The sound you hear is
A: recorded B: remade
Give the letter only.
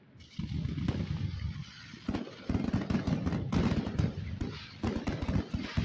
A